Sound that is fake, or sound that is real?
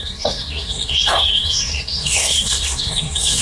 fake